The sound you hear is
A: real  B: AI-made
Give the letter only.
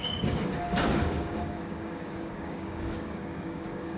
B